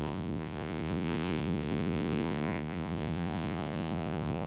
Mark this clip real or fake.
fake